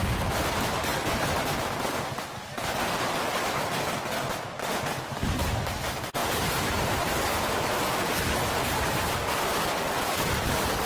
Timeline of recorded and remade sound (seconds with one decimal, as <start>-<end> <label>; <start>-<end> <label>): 0.0-6.2 recorded; 6.2-9.7 remade; 9.7-10.9 recorded